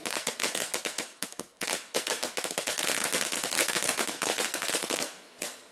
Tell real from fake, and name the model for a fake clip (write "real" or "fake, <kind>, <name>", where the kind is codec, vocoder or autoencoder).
fake, codec, SNAC